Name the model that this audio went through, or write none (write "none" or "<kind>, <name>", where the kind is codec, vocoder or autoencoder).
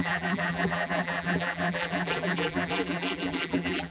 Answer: vocoder, BigVGAN v2